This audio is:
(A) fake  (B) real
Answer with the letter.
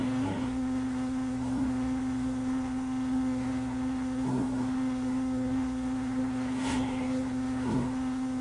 A